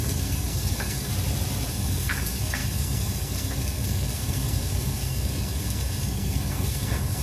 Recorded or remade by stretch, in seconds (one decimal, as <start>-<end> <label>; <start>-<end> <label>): 0.0-1.1 remade; 1.1-1.7 recorded; 1.7-7.2 remade